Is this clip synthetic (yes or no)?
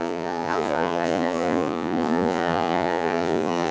yes